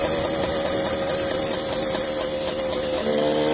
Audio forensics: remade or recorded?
recorded